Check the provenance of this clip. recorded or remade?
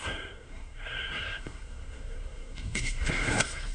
remade